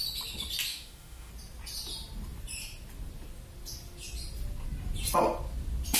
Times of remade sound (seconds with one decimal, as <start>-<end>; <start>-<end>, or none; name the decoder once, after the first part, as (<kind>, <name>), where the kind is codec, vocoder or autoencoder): 0.7-1.3 (autoencoder, DAC-VAE)